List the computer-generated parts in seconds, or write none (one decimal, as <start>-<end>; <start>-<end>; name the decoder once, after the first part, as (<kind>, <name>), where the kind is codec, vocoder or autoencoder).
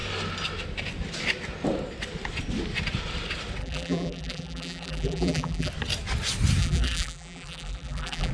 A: 3.6-5.7 (vocoder, BigVGAN v2); 6.6-8.3